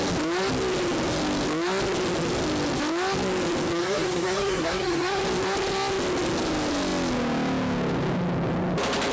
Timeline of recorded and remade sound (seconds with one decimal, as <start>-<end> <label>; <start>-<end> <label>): 0.0-3.8 recorded; 3.8-5.2 remade; 5.2-9.1 recorded